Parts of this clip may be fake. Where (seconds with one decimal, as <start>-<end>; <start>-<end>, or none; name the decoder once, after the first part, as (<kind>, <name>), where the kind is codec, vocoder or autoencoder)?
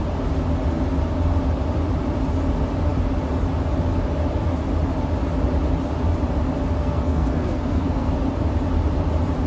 6.8-8.1 (codec, SNAC)